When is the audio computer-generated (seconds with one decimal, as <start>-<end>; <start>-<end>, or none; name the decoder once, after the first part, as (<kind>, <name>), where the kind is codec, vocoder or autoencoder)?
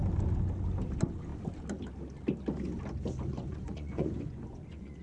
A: 3.3-5.0 (vocoder, Vocos)